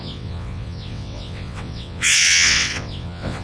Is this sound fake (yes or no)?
yes